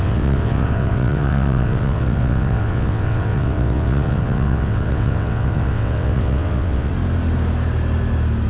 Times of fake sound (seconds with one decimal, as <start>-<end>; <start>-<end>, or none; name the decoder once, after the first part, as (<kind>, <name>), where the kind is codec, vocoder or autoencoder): 0.0-6.9 (vocoder, WaveNeXt)